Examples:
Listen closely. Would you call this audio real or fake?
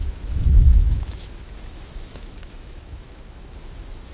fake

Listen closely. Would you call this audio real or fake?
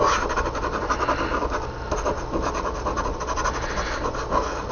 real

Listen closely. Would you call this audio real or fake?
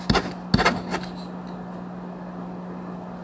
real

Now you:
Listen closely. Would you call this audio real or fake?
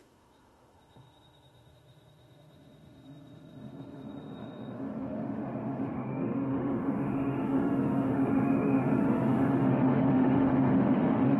fake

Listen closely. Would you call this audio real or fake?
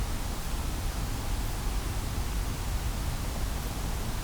real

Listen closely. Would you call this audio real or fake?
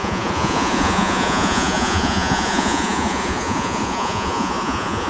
fake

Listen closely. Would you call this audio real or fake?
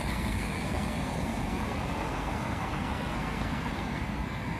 fake